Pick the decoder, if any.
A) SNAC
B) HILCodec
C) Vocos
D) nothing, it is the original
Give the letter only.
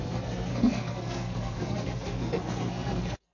A